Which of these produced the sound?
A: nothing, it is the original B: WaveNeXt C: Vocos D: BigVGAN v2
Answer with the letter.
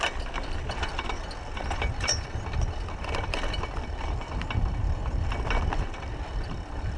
A